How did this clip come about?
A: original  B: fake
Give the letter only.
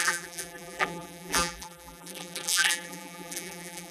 B